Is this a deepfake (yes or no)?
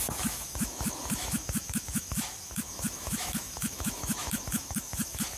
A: yes